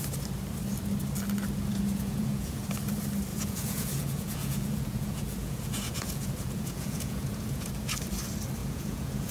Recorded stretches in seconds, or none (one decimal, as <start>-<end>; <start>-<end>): 0.0-1.7; 2.7-3.3; 7.7-8.6